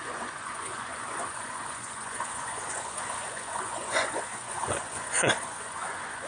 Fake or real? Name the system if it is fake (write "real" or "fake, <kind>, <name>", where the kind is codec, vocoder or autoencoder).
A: fake, vocoder, Vocos